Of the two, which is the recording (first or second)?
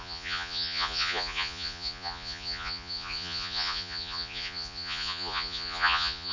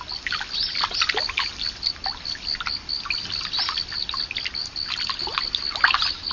second